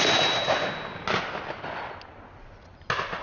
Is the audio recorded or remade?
recorded